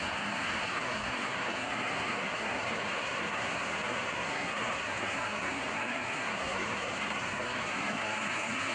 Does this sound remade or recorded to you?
remade